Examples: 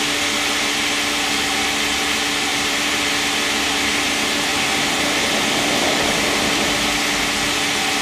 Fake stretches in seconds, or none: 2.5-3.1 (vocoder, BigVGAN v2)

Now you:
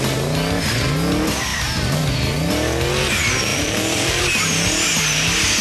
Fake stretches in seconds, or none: 1.5-2.5 (vocoder, BigVGAN v2); 3.5-4.2

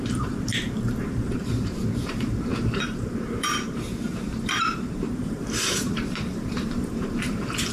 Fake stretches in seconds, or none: 0.0-0.5 (vocoder, BigVGAN v2); 1.0-7.7

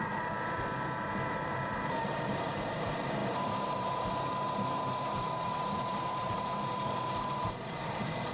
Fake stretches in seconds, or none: 0.0-8.3 (vocoder, BigVGAN v2)

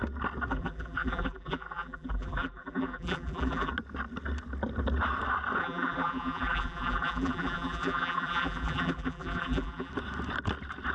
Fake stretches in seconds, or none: 0.5-3.7 (vocoder, BigVGAN v2); 5.6-9.9

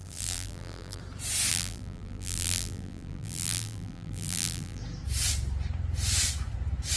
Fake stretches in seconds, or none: 0.0-1.0 (vocoder, BigVGAN v2); 1.5-4.8